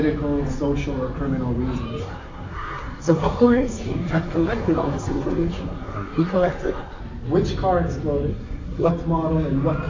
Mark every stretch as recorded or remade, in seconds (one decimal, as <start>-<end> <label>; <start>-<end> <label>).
0.0-2.0 recorded; 2.0-7.0 remade; 7.0-8.3 recorded; 8.3-8.9 remade; 8.9-9.9 recorded